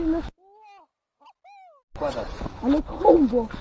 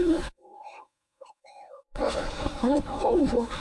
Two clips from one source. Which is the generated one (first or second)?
second